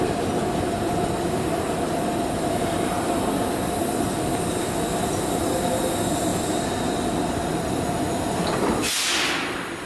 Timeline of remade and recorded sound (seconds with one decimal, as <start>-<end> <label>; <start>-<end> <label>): 0.0-9.9 recorded